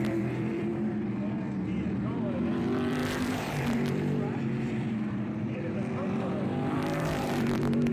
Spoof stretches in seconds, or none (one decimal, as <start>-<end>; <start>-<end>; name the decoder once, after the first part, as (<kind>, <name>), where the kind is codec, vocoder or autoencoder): 0.0-0.7 (vocoder, BigVGAN v2); 2.0-7.9